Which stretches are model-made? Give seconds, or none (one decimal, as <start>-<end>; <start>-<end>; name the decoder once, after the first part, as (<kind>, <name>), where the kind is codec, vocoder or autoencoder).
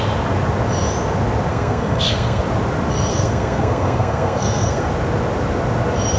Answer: 1.5-2.4 (codec, SNAC); 3.1-4.9